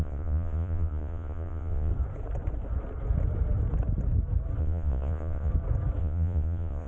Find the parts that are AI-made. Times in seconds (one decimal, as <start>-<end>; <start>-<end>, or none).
0.0-1.9; 4.6-5.5; 6.0-6.9